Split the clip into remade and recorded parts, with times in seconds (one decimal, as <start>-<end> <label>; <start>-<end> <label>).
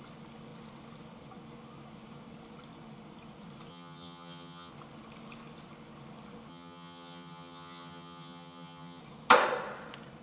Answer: 0.0-3.7 recorded; 3.7-4.7 remade; 4.7-6.5 recorded; 6.5-9.0 remade; 9.0-10.2 recorded